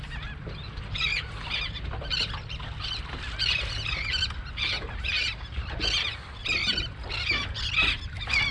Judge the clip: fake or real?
real